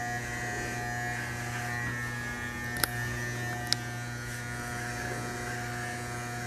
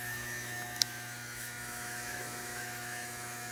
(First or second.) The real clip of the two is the first